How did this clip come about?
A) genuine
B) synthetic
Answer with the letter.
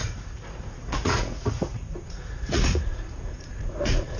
B